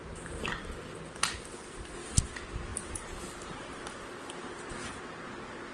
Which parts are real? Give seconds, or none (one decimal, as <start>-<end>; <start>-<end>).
0.0-5.7